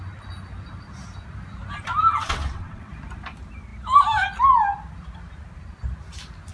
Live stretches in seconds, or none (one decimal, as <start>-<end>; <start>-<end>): 0.0-2.1; 2.9-6.5